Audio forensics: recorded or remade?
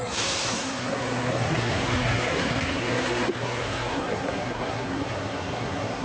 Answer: remade